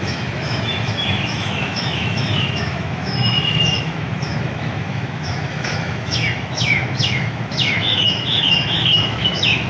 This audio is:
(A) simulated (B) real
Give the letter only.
A